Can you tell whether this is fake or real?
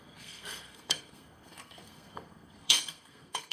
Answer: fake